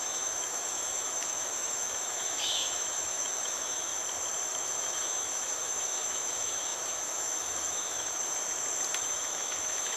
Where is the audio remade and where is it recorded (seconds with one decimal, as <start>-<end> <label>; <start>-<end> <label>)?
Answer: 0.0-3.9 remade; 3.9-4.6 recorded; 4.6-8.2 remade; 8.2-9.0 recorded; 9.0-10.0 remade